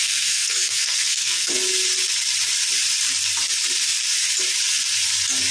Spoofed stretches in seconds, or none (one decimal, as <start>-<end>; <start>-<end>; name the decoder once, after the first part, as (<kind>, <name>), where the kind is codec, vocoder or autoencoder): 0.0-1.5 (codec, SNAC)